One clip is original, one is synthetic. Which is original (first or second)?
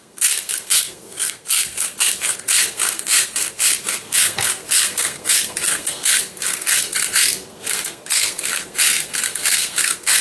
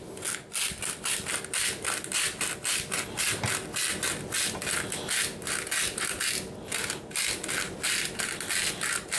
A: second